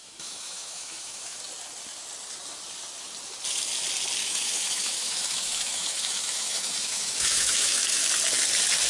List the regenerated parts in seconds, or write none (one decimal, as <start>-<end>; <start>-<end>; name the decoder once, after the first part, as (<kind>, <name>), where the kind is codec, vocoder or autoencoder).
0.0-1.4 (autoencoder, DAC-VAE); 4.2-8.0